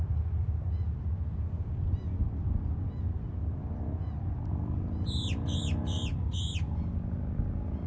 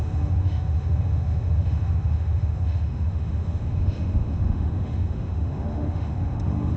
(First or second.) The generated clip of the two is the second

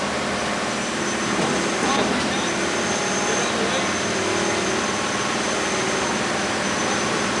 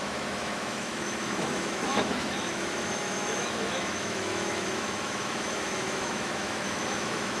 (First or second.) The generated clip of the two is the second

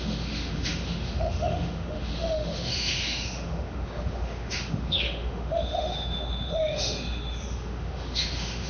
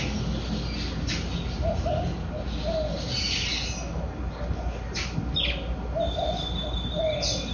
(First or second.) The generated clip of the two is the first